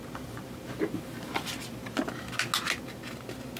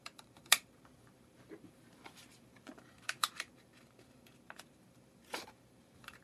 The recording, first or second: first